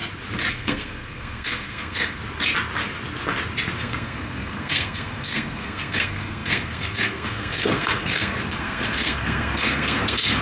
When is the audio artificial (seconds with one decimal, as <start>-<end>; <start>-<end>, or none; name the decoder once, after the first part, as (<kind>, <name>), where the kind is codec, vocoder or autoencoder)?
0.5-2.2 (codec, SNAC); 3.8-10.4